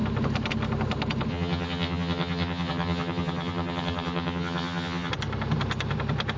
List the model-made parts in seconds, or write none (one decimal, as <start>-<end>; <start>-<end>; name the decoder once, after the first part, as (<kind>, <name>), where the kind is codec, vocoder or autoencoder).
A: 1.3-5.1 (vocoder, HiFi-GAN)